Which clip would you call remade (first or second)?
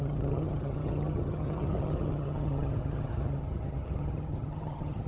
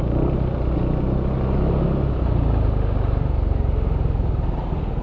first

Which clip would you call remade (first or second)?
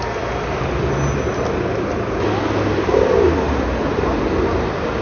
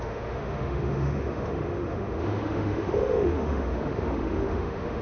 second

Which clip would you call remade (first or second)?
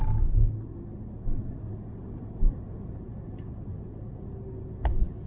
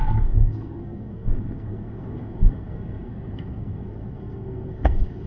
second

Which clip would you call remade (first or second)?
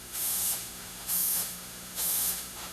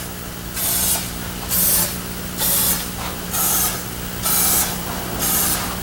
first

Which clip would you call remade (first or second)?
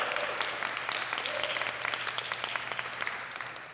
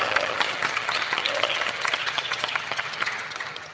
second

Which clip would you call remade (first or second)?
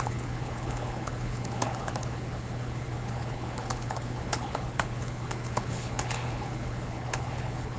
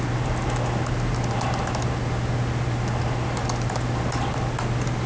first